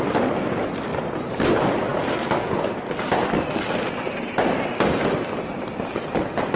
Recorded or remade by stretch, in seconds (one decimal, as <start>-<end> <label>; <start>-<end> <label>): 0.0-6.6 recorded